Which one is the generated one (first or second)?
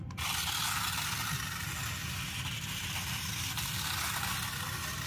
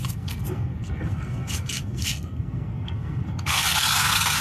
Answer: second